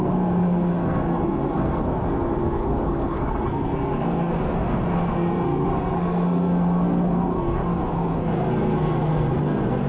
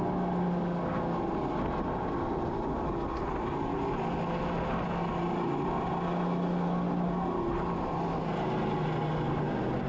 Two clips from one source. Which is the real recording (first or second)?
second